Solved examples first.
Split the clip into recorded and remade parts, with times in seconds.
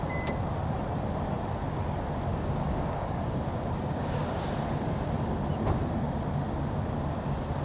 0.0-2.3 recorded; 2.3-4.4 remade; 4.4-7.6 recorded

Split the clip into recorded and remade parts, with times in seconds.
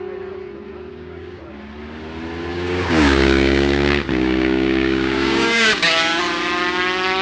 0.0-0.9 recorded; 0.9-1.4 remade; 1.4-2.5 recorded; 2.5-6.2 remade; 6.2-7.2 recorded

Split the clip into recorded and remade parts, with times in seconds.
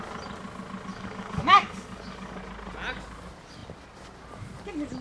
0.0-0.9 recorded; 0.9-2.4 remade; 2.4-5.0 recorded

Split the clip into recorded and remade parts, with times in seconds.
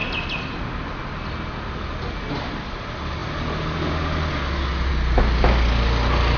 0.0-6.4 recorded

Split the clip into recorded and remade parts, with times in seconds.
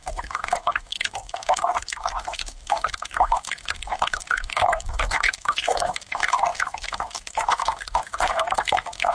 0.0-9.1 remade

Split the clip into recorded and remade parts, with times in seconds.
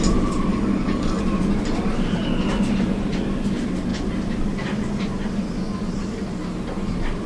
0.0-0.5 recorded; 0.5-1.2 remade; 1.2-7.3 recorded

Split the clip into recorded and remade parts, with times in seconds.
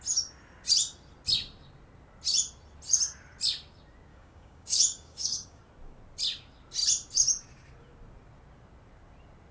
0.0-4.1 recorded; 4.1-5.6 remade; 5.6-9.5 recorded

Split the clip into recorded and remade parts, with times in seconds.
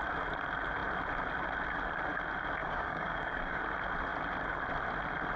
0.0-2.6 recorded; 2.6-3.6 remade; 3.6-5.4 recorded